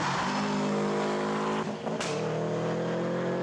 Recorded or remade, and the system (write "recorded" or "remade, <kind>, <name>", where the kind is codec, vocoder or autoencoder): recorded